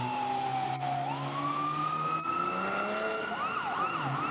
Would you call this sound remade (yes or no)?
no